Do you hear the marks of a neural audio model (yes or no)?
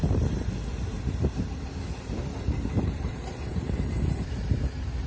yes